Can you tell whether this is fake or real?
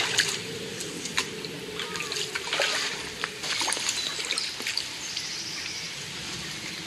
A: real